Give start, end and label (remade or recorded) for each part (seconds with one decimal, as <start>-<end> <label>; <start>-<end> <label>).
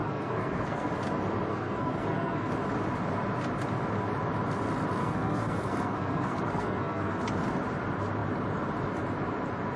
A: 0.0-0.9 remade; 0.9-1.5 recorded; 1.5-2.5 remade; 2.5-5.0 recorded; 5.0-7.2 remade; 7.2-9.8 recorded